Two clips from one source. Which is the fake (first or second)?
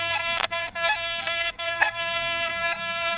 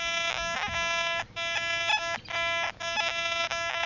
first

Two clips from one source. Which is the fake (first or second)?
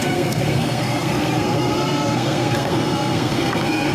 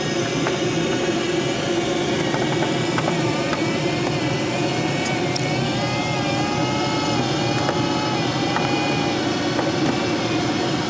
first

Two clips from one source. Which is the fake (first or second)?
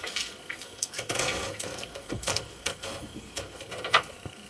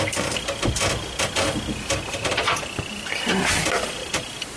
first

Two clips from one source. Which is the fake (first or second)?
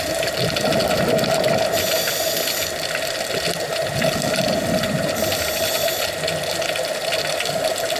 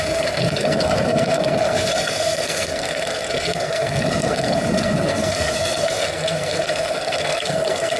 second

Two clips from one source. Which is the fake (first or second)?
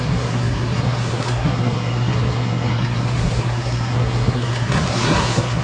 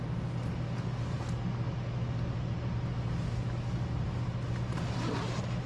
first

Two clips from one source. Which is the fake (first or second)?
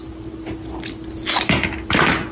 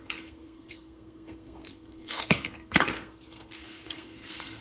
second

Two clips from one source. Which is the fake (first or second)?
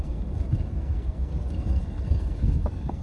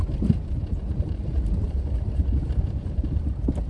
first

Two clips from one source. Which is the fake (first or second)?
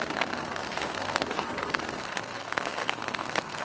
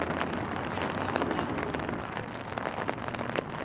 first